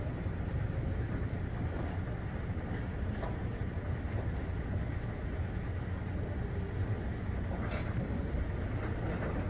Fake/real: real